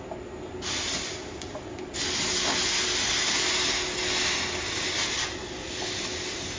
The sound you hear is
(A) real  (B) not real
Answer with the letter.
A